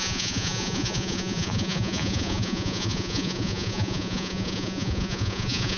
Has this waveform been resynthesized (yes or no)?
yes